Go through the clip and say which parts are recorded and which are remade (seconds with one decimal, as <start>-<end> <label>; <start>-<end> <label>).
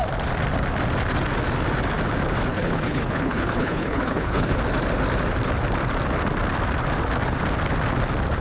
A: 0.0-2.5 recorded; 2.5-4.6 remade; 4.6-8.4 recorded